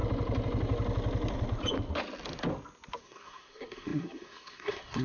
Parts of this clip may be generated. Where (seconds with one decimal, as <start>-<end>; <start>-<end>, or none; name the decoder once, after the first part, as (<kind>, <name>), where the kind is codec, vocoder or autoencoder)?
3.0-5.0 (codec, SNAC)